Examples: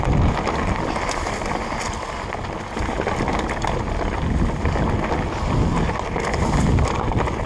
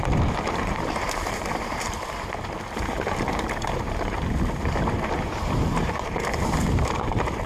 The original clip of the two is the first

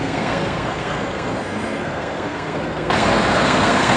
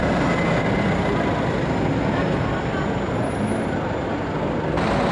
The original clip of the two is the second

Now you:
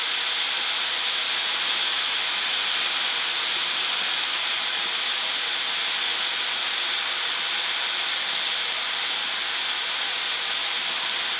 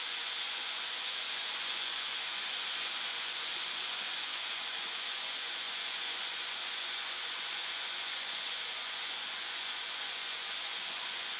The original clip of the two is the first